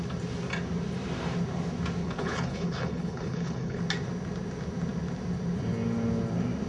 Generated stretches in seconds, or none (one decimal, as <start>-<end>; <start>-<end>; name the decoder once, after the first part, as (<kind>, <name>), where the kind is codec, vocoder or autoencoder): 2.0-3.8 (codec, HILCodec)